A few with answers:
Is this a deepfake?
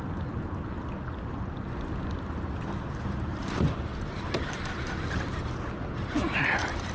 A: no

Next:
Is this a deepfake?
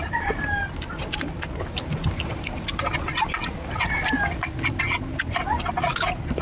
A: no